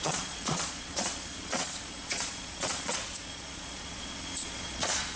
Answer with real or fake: fake